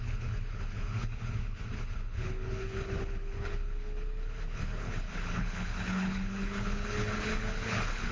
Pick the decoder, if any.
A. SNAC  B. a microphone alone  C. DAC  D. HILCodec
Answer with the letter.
D